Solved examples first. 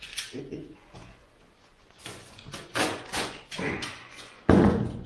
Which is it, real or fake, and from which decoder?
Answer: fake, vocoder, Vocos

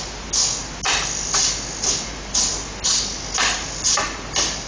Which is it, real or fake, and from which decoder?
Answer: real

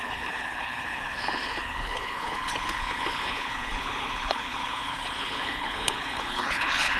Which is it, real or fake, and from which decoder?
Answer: fake, codec, HILCodec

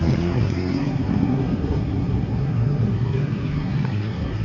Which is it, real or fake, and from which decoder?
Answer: fake, codec, SNAC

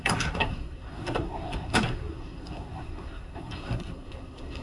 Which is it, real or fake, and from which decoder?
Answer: fake, codec, SNAC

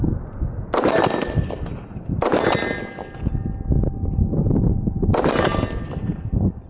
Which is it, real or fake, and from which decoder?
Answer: real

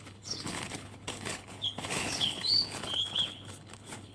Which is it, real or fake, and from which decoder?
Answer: fake, codec, HILCodec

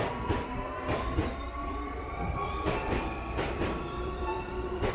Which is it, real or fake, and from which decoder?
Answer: fake, vocoder, BigVGAN v2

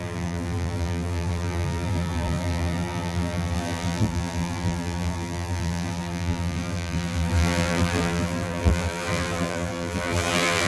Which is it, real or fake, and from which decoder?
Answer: fake, vocoder, BigVGAN v2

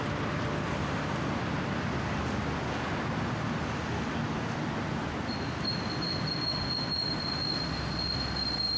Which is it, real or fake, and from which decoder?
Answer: real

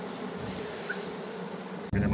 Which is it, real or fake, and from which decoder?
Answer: fake, vocoder, BigVGAN v2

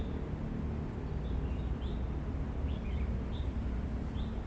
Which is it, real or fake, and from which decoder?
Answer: real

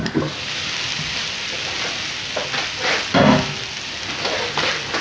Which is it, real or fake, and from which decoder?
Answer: real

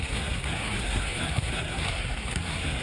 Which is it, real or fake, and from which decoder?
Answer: fake, codec, SNAC